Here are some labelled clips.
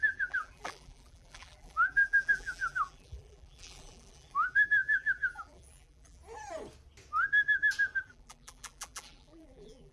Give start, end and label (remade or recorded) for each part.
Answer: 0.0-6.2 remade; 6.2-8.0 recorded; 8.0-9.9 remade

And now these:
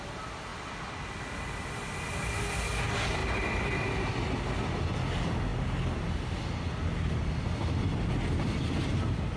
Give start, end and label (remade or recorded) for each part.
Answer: 0.0-0.5 recorded; 0.5-1.7 remade; 1.7-9.4 recorded

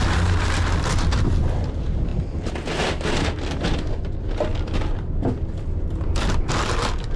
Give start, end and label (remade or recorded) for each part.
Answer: 0.0-7.2 recorded

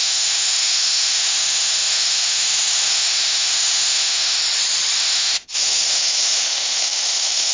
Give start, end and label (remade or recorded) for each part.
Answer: 0.0-4.4 remade; 4.4-5.0 recorded; 5.0-7.5 remade

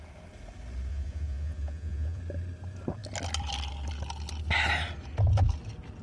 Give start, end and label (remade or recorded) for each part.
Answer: 0.0-0.9 recorded; 0.9-2.2 remade; 2.2-6.0 recorded

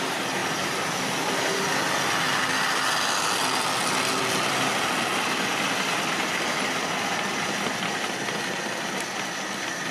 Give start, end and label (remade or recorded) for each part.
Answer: 0.0-9.9 recorded

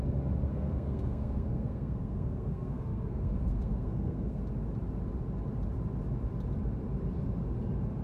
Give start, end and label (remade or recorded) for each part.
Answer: 0.0-0.5 recorded; 0.5-4.4 remade; 4.4-8.0 recorded